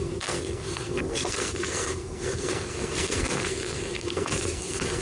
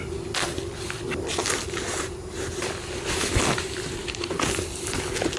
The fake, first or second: first